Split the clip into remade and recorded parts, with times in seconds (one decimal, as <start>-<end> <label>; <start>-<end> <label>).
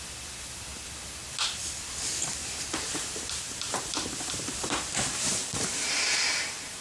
0.0-2.4 recorded; 2.4-6.8 remade